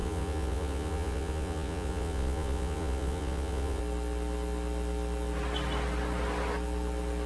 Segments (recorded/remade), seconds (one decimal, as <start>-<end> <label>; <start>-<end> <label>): 0.0-3.8 remade; 3.8-7.3 recorded